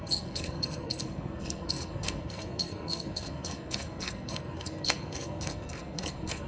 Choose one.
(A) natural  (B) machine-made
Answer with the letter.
B